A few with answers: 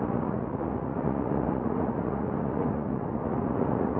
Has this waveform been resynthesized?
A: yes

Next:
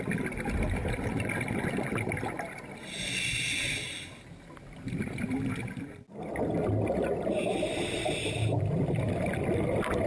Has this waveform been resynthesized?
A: no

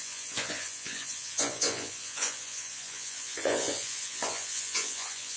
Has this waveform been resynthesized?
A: yes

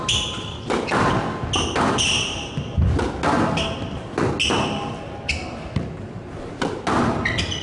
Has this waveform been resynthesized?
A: no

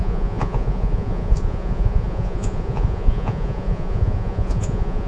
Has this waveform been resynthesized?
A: yes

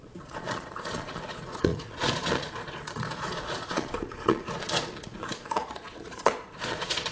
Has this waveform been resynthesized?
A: yes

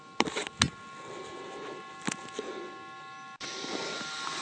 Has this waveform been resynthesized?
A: no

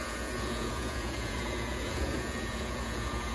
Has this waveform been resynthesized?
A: yes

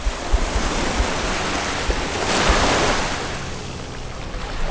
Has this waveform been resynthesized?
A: no